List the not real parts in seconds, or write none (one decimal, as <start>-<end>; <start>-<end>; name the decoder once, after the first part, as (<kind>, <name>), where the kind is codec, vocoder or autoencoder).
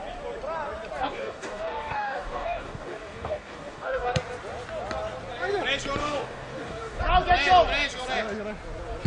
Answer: 1.0-4.1 (codec, DAC); 6.0-7.0